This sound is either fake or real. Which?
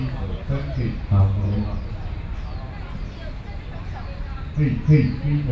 real